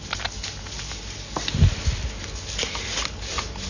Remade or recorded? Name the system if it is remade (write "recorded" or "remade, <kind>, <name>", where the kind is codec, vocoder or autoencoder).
recorded